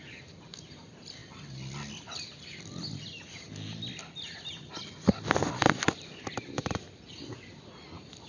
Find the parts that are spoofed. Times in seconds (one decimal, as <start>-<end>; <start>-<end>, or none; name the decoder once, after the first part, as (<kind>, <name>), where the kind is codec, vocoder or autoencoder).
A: none